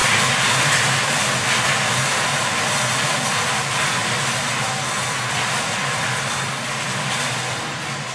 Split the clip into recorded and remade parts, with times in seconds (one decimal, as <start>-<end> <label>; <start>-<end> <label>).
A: 0.0-4.0 remade; 4.0-5.3 recorded; 5.3-8.1 remade